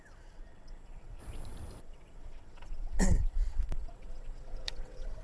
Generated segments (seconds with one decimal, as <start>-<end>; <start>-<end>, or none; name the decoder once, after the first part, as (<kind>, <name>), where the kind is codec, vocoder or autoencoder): 0.0-1.2 (vocoder, WaveNeXt); 1.8-5.2